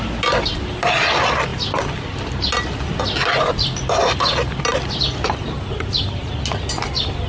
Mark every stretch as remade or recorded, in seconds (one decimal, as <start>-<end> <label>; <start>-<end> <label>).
0.0-7.3 recorded